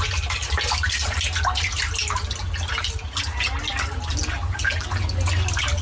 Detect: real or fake real